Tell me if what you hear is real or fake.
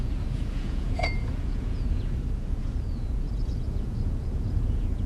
fake